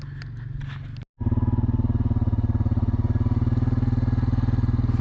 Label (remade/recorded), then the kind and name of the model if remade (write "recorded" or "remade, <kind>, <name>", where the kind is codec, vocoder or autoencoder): recorded